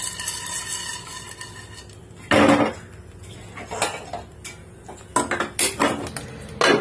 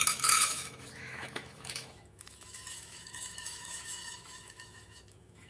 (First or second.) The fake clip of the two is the second